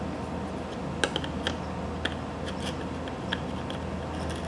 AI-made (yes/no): no